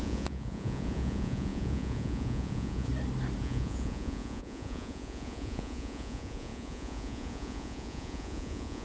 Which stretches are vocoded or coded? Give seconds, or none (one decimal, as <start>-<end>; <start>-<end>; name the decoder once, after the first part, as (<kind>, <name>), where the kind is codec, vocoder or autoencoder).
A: 0.0-2.9 (vocoder, Vocos); 3.4-8.8